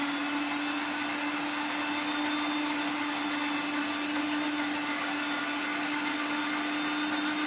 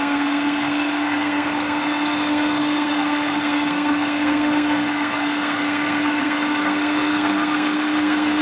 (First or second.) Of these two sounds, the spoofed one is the second